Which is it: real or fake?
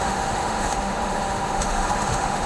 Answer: fake